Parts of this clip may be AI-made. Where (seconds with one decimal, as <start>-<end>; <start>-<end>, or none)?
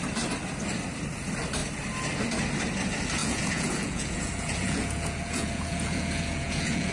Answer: 3.2-6.9